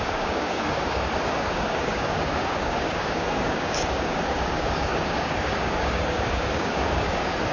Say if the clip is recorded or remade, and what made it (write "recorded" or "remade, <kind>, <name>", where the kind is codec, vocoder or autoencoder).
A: remade, codec, DAC